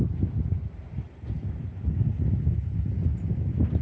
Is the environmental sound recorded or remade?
recorded